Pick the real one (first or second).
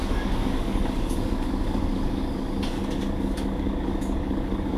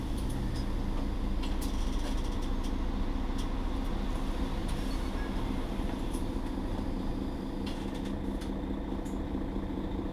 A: second